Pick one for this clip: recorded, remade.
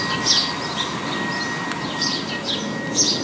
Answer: recorded